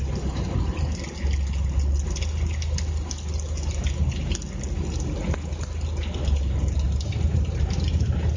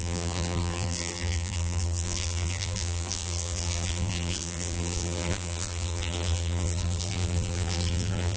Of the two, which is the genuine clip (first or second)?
first